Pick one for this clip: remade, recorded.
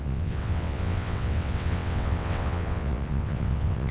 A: remade